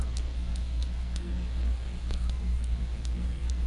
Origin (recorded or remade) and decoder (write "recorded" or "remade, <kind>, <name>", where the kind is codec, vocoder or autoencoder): remade, codec, SNAC